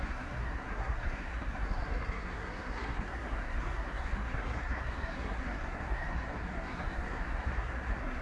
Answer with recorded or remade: remade